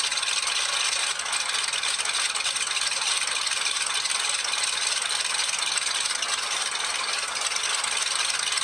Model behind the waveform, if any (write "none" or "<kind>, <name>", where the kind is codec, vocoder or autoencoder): none